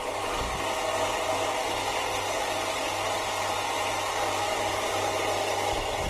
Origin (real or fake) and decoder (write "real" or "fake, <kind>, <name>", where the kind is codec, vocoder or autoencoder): real